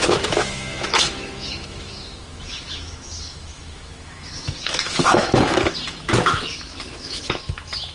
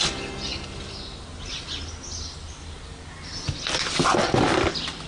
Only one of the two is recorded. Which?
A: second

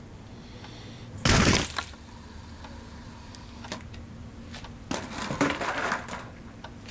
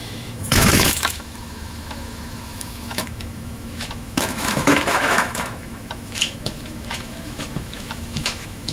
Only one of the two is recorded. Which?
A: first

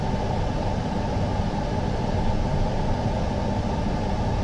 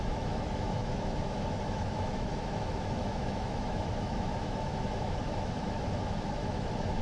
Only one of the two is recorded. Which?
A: first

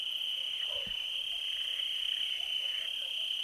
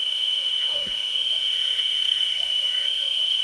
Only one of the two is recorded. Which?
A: first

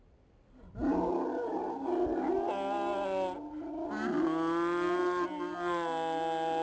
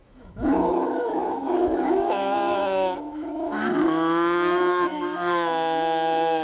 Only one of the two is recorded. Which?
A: first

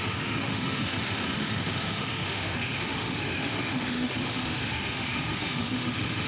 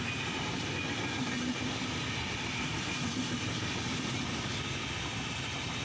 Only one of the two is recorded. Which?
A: second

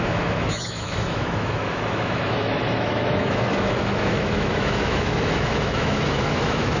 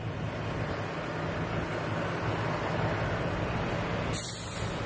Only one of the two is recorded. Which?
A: second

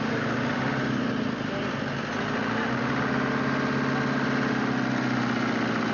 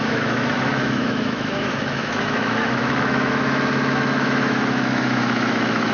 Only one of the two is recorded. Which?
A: first